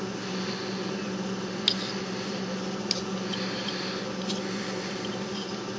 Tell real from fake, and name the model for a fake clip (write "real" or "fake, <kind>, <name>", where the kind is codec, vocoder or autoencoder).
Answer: real